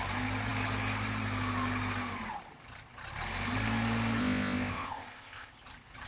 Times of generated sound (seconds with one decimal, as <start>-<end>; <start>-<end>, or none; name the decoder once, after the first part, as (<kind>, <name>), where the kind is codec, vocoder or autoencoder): 4.2-5.5 (codec, ZipCodec)